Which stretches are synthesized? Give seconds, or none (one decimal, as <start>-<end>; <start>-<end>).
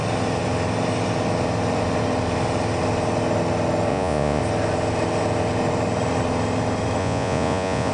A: 3.9-4.4; 7.0-7.9